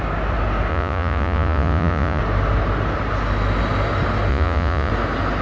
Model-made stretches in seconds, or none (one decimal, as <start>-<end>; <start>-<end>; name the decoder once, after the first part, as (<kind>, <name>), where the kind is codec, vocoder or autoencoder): 0.7-2.2 (vocoder, Vocos); 4.3-4.9